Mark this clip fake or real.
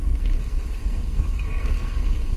fake